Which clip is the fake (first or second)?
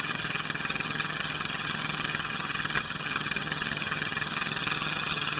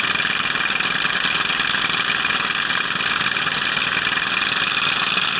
first